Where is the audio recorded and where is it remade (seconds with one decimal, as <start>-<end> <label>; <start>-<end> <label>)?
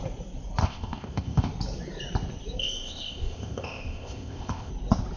0.0-0.6 recorded; 0.6-1.5 remade; 1.5-2.6 recorded; 2.6-4.7 remade; 4.7-5.2 recorded